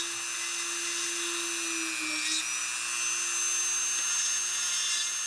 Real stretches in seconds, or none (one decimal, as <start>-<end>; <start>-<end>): 0.0-5.3